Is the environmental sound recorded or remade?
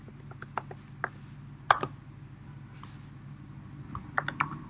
recorded